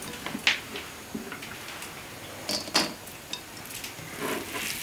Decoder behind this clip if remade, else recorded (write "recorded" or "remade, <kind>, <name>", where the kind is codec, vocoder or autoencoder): recorded